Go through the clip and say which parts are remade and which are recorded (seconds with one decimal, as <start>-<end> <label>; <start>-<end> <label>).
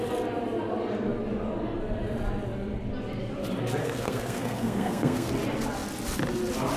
0.0-3.8 recorded; 3.8-5.3 remade; 5.3-6.8 recorded